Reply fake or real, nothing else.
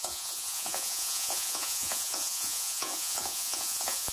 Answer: fake